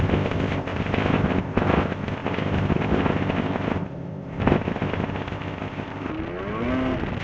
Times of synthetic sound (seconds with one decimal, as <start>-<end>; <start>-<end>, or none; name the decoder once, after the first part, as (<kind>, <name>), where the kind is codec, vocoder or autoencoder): 0.0-6.1 (codec, ZipCodec)